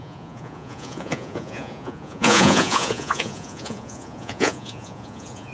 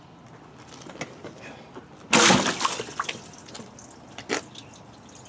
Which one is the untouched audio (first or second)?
second